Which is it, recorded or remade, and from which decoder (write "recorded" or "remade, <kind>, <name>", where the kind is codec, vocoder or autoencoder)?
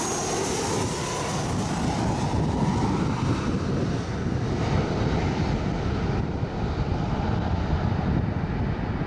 recorded